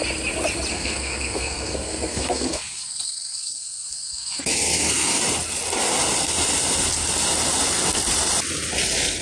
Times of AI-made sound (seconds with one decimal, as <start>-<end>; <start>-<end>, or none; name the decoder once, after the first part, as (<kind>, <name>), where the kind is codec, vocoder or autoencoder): 0.7-5.2 (codec, SNAC)